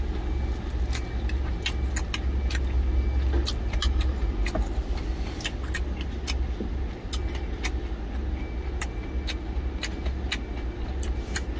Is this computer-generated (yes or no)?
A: no